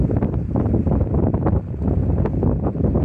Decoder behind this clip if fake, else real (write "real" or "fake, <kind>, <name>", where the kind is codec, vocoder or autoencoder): real